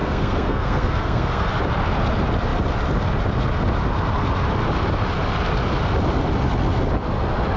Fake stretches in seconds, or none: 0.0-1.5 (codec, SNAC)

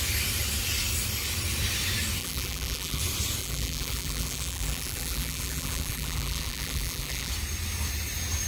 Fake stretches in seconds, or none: 2.2-3.0 (vocoder, BigVGAN v2); 3.4-7.3

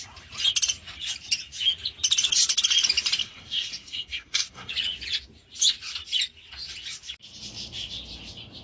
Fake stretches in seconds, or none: 3.2-4.7 (codec, SNAC)

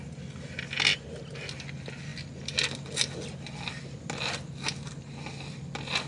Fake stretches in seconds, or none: none